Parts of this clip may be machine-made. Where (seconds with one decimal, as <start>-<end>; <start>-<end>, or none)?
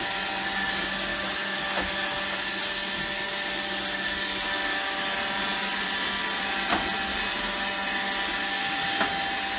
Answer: 1.1-1.6